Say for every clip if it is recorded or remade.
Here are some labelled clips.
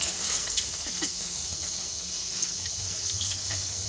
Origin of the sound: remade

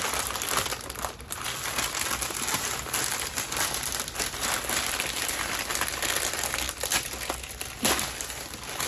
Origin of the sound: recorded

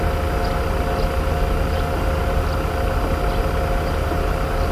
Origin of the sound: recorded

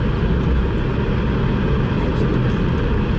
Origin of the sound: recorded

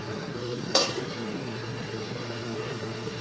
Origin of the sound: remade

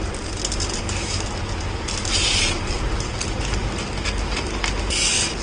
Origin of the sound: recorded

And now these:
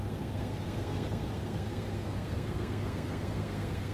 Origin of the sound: remade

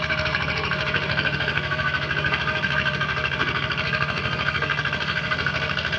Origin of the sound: remade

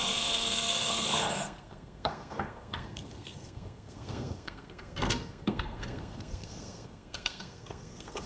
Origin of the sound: remade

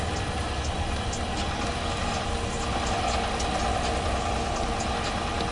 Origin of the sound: recorded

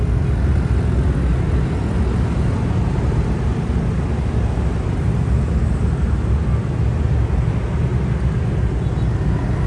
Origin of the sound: recorded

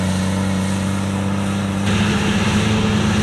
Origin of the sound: recorded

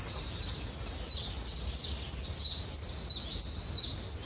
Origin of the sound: recorded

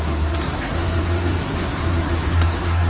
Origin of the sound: remade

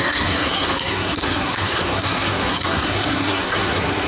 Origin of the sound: remade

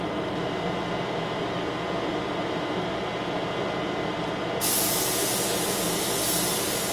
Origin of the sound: recorded